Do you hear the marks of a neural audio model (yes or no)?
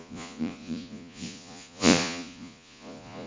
yes